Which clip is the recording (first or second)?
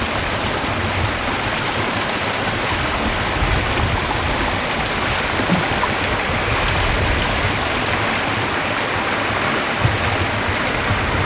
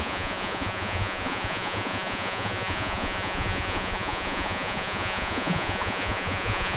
first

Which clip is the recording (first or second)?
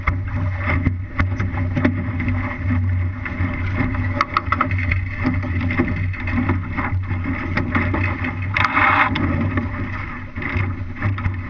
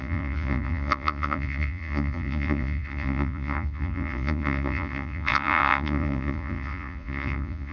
first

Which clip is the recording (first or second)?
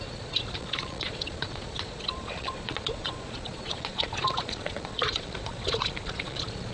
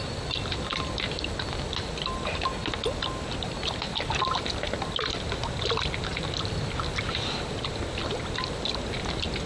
second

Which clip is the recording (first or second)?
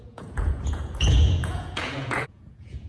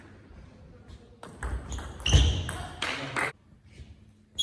second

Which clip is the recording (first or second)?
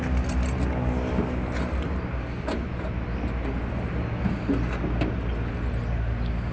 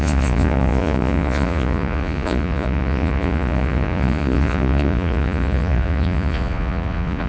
first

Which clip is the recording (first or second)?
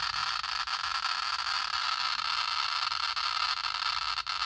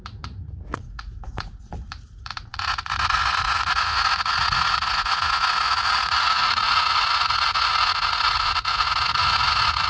first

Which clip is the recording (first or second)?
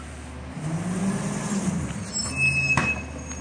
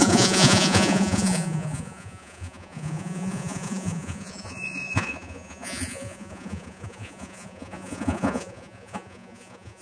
first